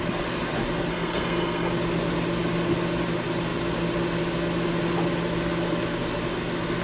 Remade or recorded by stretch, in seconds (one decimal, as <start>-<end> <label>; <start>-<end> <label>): 0.0-0.9 recorded; 0.9-1.7 remade; 1.7-6.8 recorded